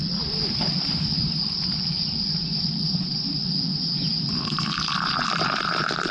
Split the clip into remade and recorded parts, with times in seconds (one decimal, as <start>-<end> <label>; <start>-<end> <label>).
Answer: 0.0-3.7 remade; 3.7-6.1 recorded